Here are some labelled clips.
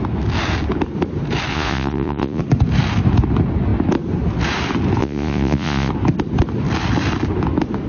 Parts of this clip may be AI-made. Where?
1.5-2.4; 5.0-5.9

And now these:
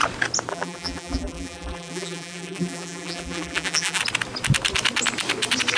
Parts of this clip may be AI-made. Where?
0.5-4.0

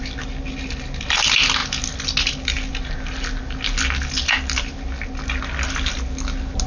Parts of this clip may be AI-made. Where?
none

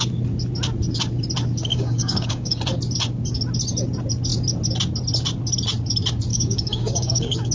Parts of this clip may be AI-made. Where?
1.7-2.6; 6.3-7.5